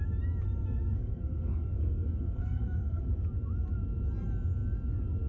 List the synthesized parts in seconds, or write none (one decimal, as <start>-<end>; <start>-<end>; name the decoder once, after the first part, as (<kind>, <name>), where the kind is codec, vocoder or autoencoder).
0.6-3.0 (codec, SNAC)